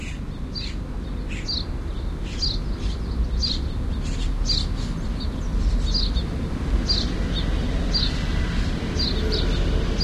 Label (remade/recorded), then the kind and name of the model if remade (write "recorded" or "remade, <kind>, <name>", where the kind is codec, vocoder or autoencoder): recorded